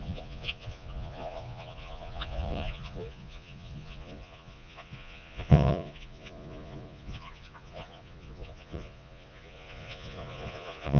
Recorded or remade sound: remade